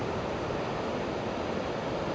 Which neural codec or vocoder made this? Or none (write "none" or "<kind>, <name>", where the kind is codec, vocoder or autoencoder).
none